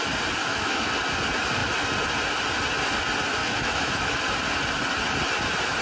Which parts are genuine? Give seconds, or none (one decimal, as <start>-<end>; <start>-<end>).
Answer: 0.0-0.4; 0.9-3.4; 4.2-5.8

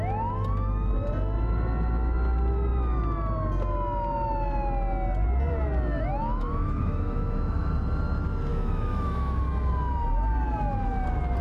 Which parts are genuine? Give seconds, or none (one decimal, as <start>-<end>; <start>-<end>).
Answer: 0.0-6.2; 7.7-8.5; 9.4-11.4

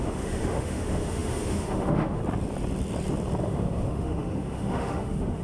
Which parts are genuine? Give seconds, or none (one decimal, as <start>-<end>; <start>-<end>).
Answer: 2.2-3.4